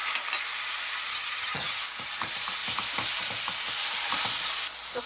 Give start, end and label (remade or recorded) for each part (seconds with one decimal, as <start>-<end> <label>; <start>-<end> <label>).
0.0-1.1 recorded; 1.1-1.8 remade; 1.8-5.1 recorded